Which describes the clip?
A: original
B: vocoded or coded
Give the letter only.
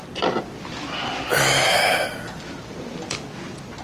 A